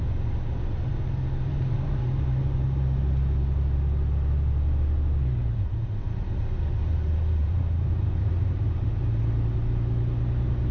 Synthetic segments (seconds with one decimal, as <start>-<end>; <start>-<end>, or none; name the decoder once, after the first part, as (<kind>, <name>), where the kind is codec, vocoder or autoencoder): 1.5-2.1 (vocoder, BigVGAN v2); 7.4-9.2